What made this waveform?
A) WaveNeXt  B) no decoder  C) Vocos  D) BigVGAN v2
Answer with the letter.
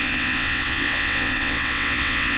A